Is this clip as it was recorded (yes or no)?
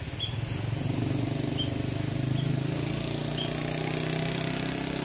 yes